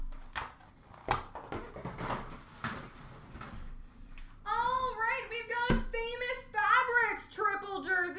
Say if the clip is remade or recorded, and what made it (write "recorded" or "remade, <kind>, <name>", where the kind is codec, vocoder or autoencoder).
recorded